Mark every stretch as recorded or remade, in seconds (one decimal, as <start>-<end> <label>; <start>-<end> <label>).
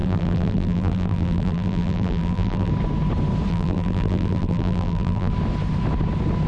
0.0-2.7 remade; 2.7-3.5 recorded; 3.5-5.3 remade; 5.3-6.5 recorded